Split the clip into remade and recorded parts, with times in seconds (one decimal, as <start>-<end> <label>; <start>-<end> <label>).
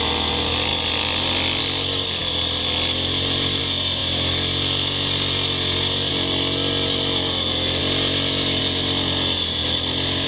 0.0-10.3 recorded